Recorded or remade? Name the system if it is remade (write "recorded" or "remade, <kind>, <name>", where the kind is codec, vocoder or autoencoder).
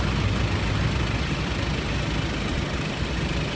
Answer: recorded